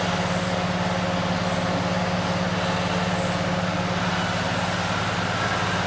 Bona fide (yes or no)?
yes